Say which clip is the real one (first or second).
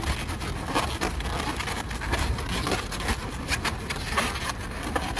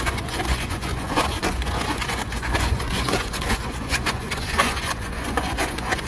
first